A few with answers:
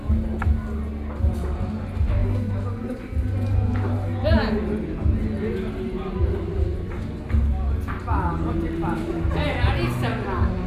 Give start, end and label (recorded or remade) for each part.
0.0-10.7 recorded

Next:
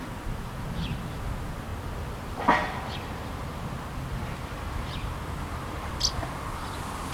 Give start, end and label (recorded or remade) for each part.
0.0-7.1 recorded

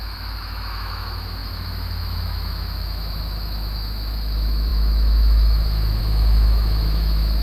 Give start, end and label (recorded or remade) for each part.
0.0-7.4 remade

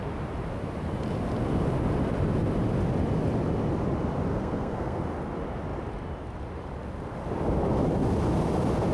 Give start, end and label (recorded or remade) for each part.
0.0-4.3 recorded; 4.3-5.0 remade; 5.0-8.9 recorded

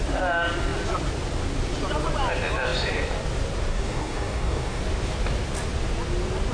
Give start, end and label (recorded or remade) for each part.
0.0-3.7 recorded; 3.7-4.8 remade; 4.8-6.5 recorded